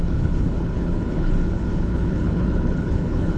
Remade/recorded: remade